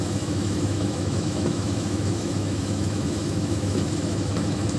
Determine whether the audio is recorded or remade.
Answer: remade